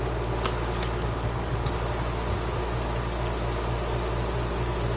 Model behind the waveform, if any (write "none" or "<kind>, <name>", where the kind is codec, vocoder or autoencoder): none